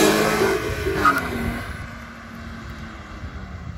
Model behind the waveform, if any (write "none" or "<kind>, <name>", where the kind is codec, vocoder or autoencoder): none